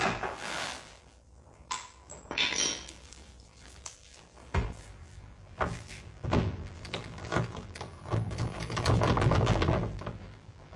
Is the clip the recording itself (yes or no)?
no